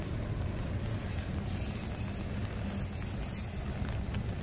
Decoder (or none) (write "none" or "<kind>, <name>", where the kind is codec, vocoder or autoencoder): none